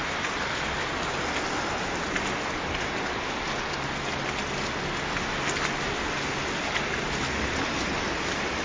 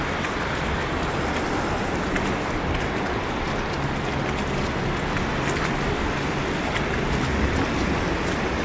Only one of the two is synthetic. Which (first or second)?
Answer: second